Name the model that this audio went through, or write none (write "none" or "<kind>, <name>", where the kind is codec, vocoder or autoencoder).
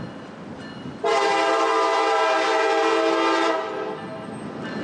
none